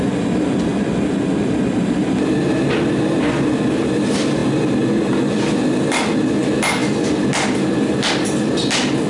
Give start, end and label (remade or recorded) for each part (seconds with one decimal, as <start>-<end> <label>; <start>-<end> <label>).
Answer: 0.0-9.1 recorded